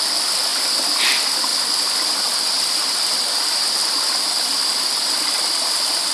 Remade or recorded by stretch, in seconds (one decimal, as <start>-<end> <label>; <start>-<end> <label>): 0.0-6.1 recorded